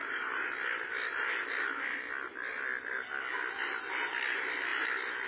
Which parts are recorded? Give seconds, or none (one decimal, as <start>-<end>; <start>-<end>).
0.5-5.3